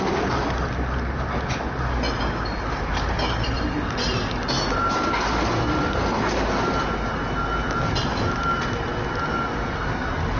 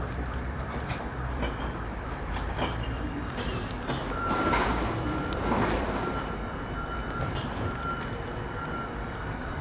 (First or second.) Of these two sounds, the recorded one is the first